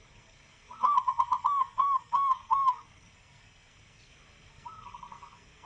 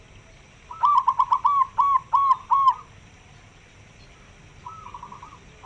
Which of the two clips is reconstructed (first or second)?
first